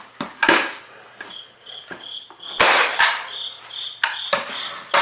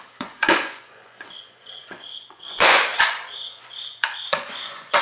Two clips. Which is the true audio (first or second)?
first